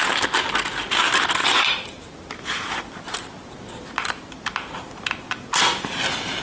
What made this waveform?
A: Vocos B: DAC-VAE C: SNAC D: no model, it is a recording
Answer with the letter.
D